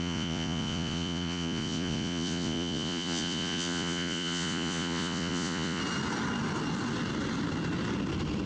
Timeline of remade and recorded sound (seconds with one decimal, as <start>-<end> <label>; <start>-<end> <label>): 0.0-5.8 remade; 5.8-8.5 recorded